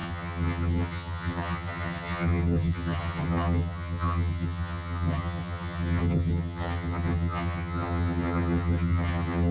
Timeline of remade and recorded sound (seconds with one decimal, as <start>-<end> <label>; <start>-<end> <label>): 0.0-9.5 remade